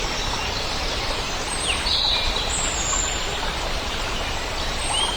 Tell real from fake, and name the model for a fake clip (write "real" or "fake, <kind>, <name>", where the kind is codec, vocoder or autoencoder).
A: fake, vocoder, BigVGAN v2